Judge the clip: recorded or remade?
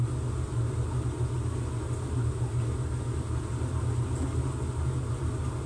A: recorded